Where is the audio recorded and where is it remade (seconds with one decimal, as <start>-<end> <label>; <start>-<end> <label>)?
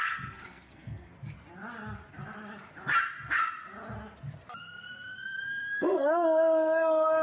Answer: 0.0-1.1 remade; 1.1-4.6 recorded; 4.6-7.2 remade